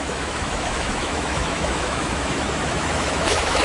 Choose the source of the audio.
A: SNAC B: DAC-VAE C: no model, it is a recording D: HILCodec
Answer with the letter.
B